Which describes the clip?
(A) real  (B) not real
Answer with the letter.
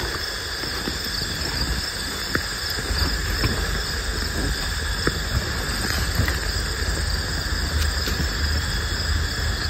A